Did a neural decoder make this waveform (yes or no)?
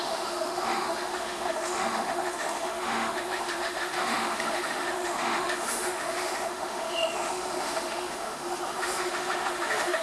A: yes